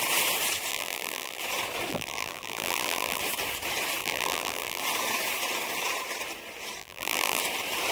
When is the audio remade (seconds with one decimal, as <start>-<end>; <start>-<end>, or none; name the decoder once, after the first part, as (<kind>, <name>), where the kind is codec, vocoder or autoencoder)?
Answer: 0.7-1.4 (vocoder, BigVGAN v2); 1.9-3.2; 4.0-4.8; 6.8-7.4